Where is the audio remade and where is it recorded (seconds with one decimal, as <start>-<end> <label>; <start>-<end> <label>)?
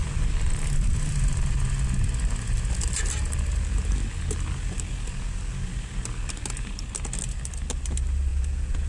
0.0-8.3 recorded; 8.3-8.9 remade